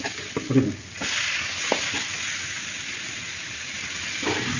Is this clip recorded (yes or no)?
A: yes